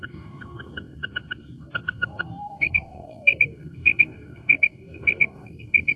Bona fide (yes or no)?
no